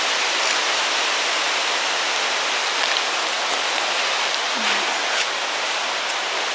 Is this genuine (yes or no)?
no